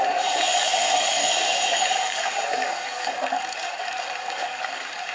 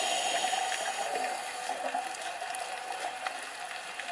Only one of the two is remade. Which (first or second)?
first